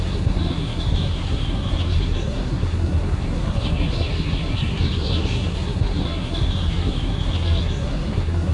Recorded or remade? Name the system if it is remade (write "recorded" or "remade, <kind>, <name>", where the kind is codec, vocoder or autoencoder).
remade, codec, SNAC